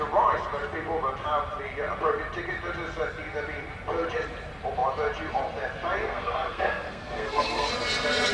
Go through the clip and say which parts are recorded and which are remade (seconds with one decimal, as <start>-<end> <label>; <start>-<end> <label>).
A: 0.0-6.0 recorded; 6.0-7.7 remade; 7.7-8.3 recorded